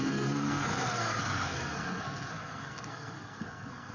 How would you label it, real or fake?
fake